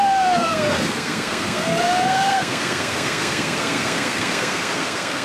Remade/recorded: remade